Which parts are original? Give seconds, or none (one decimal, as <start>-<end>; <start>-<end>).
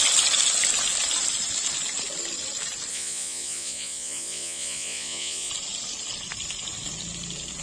0.0-2.9; 5.5-7.6